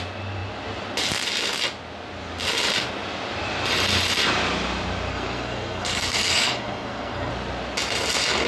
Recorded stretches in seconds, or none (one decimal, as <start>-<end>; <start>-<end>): 0.0-5.1; 7.3-8.5